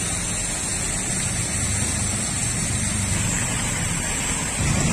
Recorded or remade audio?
recorded